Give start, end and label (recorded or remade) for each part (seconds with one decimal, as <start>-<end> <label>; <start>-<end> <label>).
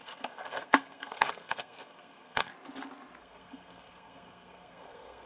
0.0-2.5 remade; 2.5-3.2 recorded; 3.2-5.3 remade